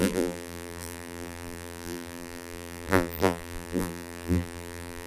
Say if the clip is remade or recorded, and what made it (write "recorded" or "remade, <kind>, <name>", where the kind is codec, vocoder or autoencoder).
remade, vocoder, BigVGAN v2